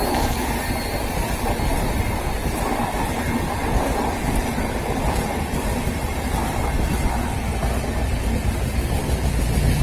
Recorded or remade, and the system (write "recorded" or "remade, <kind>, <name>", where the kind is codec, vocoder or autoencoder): recorded